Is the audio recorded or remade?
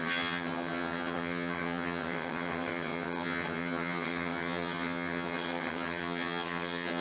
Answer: remade